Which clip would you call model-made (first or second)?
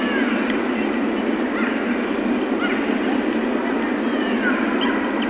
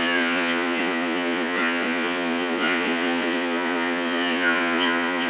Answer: second